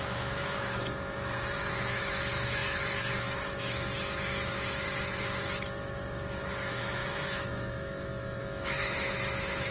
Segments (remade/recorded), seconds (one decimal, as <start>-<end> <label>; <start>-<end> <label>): 0.0-9.7 remade